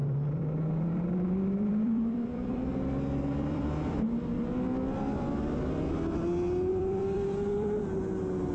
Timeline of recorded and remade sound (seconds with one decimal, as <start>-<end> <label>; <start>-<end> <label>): 0.0-4.0 remade; 4.0-6.7 recorded; 6.7-7.8 remade; 7.8-8.5 recorded